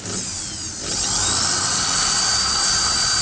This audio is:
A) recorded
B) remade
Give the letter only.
A